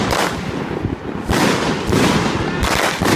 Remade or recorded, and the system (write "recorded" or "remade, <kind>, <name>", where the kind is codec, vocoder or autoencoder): recorded